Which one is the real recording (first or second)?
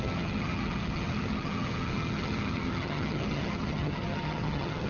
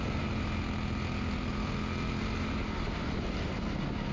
second